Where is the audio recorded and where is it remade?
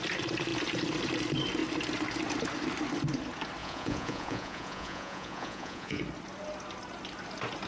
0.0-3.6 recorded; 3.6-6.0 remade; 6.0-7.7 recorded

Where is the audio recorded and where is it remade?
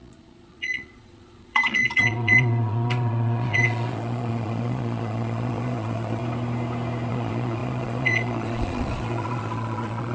0.0-6.2 remade; 6.2-7.1 recorded; 7.1-10.1 remade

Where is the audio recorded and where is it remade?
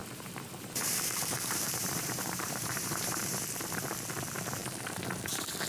0.0-3.4 remade; 3.4-5.7 recorded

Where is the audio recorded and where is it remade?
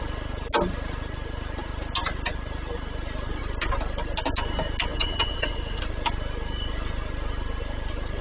0.0-4.9 recorded; 4.9-5.8 remade; 5.8-8.2 recorded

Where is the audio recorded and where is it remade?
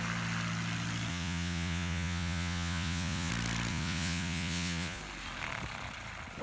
0.0-1.1 recorded; 1.1-3.3 remade; 3.3-3.7 recorded; 3.7-5.0 remade; 5.0-6.4 recorded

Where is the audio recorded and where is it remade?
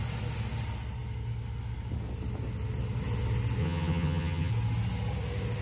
0.0-3.6 recorded; 3.6-4.5 remade; 4.5-5.6 recorded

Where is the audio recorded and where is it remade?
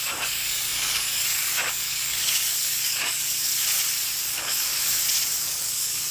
0.0-3.5 remade; 3.5-4.2 recorded; 4.2-4.7 remade; 4.7-5.4 recorded; 5.4-6.1 remade